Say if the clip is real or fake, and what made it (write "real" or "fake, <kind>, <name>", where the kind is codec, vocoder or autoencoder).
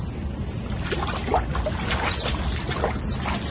real